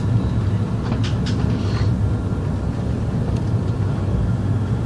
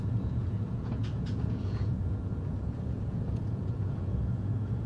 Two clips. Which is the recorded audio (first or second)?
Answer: first